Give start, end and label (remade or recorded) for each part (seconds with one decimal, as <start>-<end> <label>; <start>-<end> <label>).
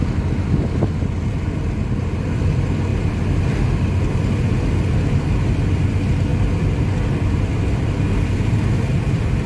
0.0-9.5 recorded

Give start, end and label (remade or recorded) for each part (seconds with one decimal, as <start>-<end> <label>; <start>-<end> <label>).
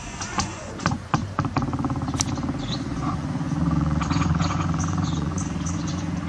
0.0-1.2 remade; 1.2-2.6 recorded; 2.6-6.3 remade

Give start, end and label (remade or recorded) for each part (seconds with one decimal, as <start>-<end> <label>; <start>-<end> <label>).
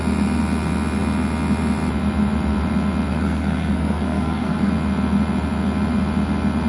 0.0-3.1 recorded; 3.1-4.7 remade; 4.7-6.7 recorded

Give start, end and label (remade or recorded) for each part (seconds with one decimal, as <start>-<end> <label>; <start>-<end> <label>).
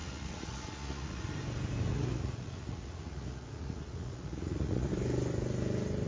0.0-1.3 remade; 1.3-1.9 recorded; 1.9-4.9 remade; 4.9-6.1 recorded